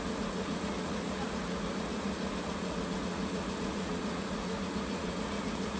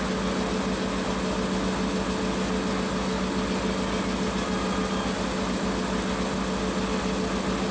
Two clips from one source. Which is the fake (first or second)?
first